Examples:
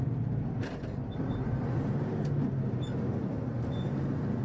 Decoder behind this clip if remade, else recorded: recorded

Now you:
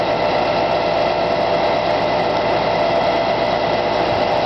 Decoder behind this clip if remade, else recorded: recorded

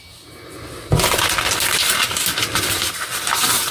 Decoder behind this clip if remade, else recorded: recorded